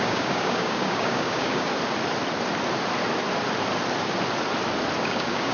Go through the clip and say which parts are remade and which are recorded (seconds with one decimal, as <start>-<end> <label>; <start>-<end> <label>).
0.0-1.7 remade; 1.7-5.0 recorded; 5.0-5.5 remade